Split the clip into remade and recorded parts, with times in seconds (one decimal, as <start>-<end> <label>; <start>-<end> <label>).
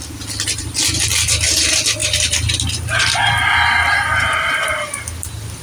0.0-5.6 recorded